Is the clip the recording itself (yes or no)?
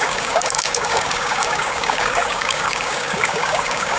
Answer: no